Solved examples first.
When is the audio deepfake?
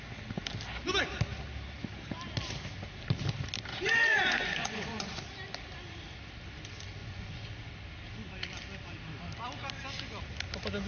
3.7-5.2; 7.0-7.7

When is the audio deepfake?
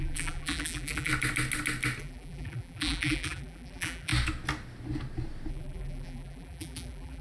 0.0-1.1; 2.0-4.1; 5.5-7.2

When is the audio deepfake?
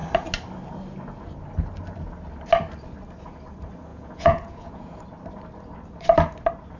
3.9-5.0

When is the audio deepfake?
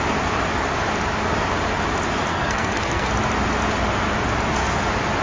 2.3-3.1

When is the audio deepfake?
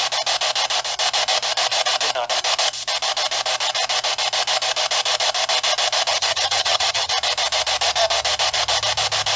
6.1-7.1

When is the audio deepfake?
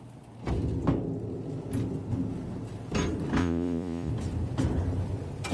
3.4-4.1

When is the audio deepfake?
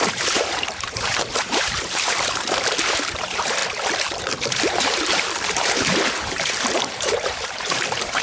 0.0-3.6; 4.2-8.2